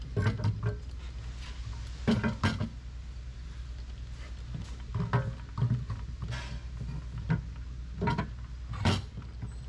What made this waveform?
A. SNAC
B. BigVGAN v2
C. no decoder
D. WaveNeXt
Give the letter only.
C